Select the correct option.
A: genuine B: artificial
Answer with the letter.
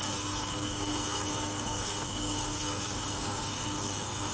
B